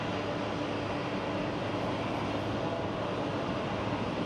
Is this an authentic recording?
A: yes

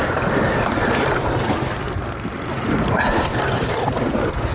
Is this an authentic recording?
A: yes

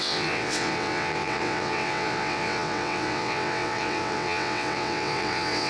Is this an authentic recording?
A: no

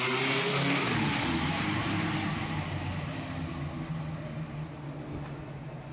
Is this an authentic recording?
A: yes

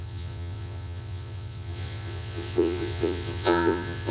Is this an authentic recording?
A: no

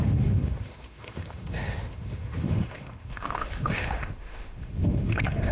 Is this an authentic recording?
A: no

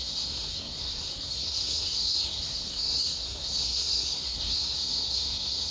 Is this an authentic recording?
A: no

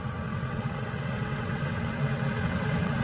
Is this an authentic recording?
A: no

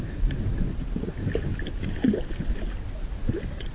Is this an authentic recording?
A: yes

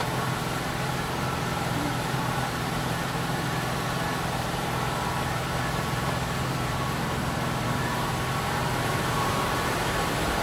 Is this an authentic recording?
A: no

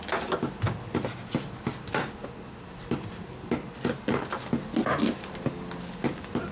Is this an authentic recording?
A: yes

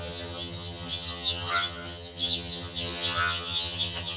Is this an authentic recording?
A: no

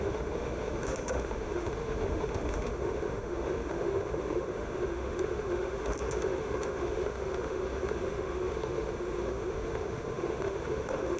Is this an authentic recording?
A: no